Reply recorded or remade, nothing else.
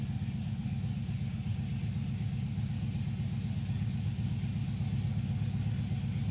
recorded